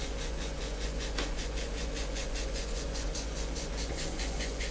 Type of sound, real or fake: fake